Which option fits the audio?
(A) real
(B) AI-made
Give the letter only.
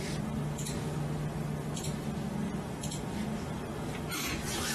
A